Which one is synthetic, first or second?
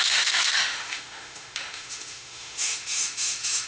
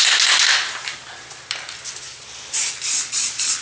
first